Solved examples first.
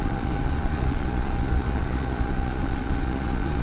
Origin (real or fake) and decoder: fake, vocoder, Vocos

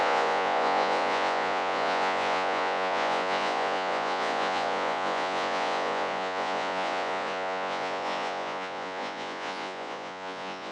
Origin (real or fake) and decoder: fake, vocoder, Vocos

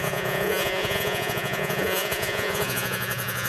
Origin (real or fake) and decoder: fake, vocoder, Vocos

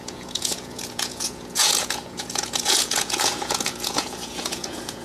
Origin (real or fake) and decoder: fake, vocoder, Vocos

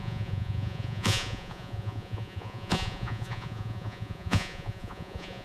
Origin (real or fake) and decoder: fake, vocoder, Vocos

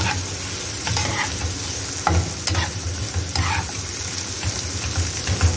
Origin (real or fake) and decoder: real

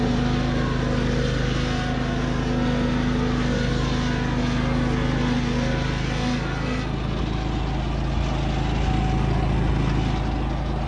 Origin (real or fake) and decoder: real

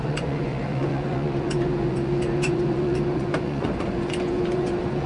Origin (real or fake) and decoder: fake, vocoder, Vocos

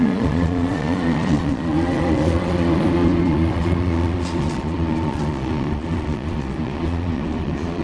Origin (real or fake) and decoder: fake, vocoder, Vocos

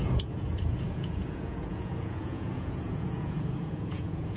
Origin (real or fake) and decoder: fake, vocoder, Vocos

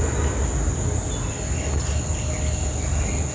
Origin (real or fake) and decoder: real